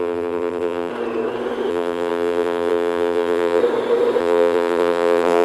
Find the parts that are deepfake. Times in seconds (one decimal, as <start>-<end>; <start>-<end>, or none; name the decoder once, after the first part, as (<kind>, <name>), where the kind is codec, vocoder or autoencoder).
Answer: 0.0-0.9 (vocoder, BigVGAN v2); 1.7-3.6; 4.2-5.4